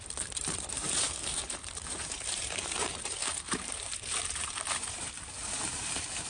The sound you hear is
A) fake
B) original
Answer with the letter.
A